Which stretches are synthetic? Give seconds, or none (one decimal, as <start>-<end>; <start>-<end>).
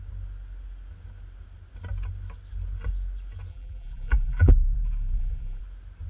3.5-5.6